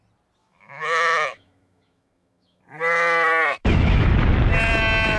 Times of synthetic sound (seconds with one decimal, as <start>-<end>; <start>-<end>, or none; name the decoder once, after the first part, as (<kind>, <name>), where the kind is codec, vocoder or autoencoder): 0.4-2.6 (autoencoder, DAC-VAE); 3.6-4.1